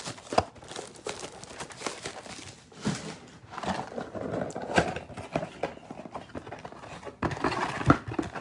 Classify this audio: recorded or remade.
recorded